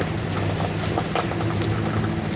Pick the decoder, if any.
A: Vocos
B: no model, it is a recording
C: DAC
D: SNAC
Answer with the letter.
B